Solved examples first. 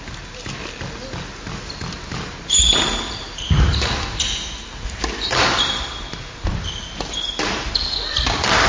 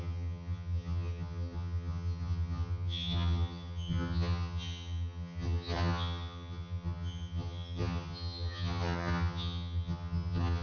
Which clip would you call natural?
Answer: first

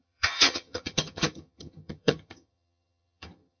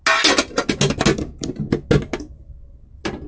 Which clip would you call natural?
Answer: second